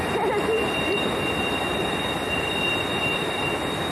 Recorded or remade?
recorded